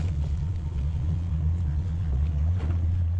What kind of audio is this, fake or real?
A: fake